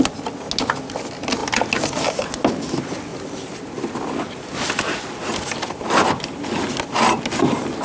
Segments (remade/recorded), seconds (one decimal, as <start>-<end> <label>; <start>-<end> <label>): 0.0-7.8 recorded